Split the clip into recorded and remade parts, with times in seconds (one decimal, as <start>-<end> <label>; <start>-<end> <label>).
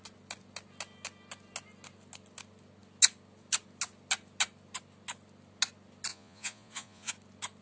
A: 0.0-6.1 recorded; 6.1-7.1 remade; 7.1-7.6 recorded